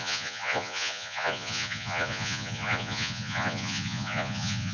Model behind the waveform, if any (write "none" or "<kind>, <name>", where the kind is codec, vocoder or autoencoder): vocoder, Vocos